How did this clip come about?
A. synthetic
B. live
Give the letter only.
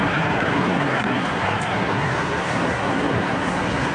A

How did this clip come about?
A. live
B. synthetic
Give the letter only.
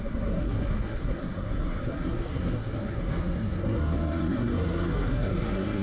B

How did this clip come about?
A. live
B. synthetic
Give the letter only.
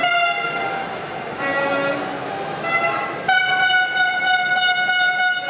A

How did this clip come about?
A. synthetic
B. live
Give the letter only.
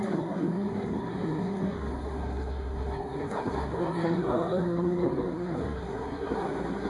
A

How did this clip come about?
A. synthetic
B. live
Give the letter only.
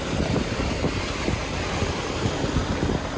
B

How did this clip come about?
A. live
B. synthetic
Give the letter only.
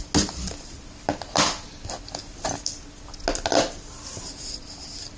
A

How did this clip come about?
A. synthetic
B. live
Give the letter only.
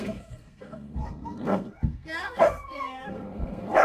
A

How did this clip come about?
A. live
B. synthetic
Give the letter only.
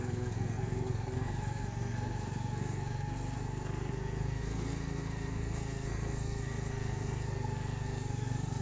B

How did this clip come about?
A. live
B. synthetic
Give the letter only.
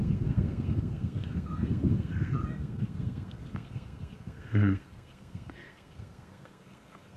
B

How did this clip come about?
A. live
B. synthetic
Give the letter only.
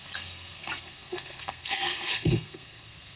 B